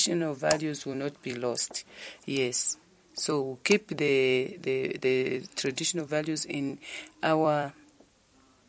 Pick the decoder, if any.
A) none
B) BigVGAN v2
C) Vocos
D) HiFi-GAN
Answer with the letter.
B